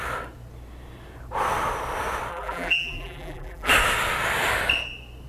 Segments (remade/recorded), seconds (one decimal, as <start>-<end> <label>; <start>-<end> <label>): 0.0-2.3 recorded; 2.3-3.7 remade; 3.7-5.3 recorded